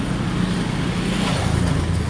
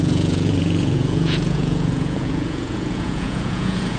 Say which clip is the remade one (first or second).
second